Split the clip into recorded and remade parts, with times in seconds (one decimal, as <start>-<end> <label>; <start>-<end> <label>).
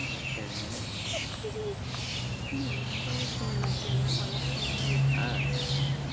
0.0-6.1 recorded